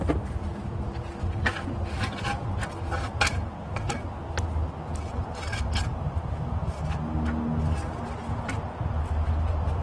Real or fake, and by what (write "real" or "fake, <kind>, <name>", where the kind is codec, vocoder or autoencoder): real